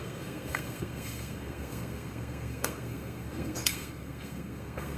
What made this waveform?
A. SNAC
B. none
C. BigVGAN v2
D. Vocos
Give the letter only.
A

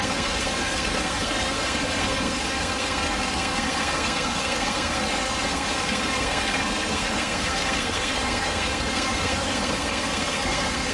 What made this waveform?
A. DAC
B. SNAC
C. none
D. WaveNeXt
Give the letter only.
B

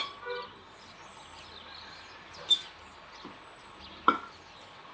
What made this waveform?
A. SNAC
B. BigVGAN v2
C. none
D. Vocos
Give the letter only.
C